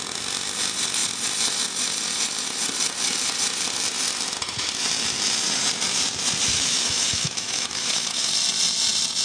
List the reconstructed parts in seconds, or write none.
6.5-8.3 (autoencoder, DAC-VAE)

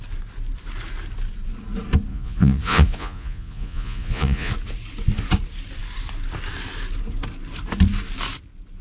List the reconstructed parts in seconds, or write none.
2.1-4.5 (vocoder, Vocos)